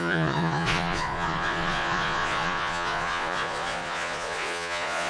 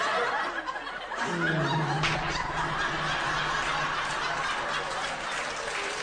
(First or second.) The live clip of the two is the second